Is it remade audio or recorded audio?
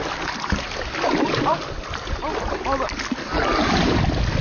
recorded